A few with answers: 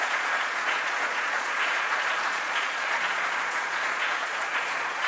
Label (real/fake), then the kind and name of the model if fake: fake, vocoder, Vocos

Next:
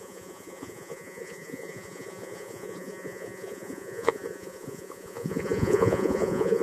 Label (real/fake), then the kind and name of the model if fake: fake, vocoder, Vocos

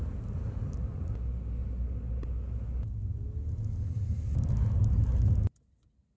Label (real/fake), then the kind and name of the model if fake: real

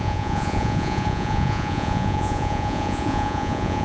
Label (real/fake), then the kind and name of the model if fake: fake, vocoder, Vocos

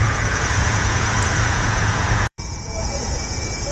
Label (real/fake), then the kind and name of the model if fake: fake, vocoder, Vocos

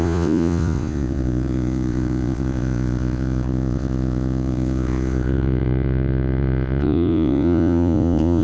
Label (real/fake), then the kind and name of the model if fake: fake, vocoder, Vocos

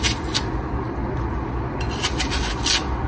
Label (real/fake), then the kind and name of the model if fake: real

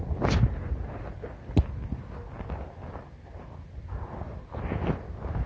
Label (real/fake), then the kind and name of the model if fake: real